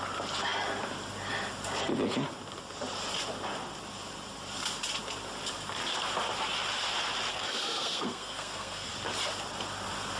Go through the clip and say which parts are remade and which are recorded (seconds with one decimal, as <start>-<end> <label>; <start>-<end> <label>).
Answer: 0.0-7.3 recorded; 7.3-8.9 remade; 8.9-10.2 recorded